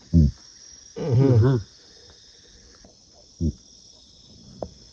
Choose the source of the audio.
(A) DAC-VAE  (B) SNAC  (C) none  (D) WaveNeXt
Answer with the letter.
C